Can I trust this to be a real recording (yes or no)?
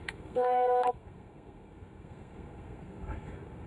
no